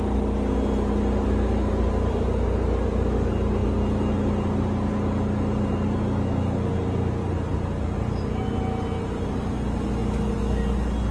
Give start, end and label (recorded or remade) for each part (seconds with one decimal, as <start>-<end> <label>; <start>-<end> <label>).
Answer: 0.0-7.5 recorded; 7.5-8.2 remade; 8.2-11.1 recorded